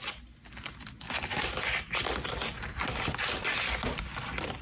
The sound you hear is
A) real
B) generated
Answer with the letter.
A